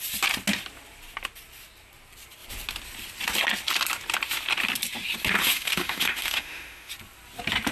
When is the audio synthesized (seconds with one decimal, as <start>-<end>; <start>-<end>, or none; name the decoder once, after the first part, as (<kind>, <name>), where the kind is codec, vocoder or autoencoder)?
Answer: 5.4-6.9 (autoencoder, DAC-VAE)